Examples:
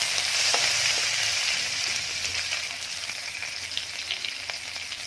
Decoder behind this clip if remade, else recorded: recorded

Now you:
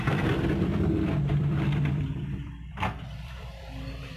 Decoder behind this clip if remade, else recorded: remade, vocoder, BigVGAN v2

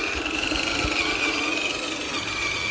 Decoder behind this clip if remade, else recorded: recorded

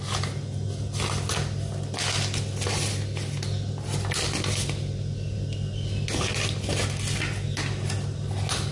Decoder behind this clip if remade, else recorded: recorded